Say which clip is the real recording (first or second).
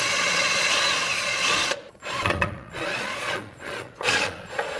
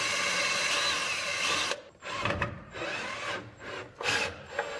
second